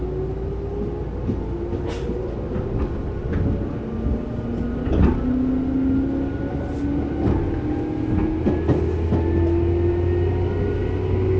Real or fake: real